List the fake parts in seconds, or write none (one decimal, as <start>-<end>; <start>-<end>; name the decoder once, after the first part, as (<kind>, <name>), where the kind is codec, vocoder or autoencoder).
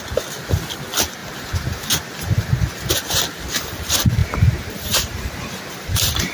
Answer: 1.2-2.9 (vocoder, BigVGAN v2); 4.2-6.3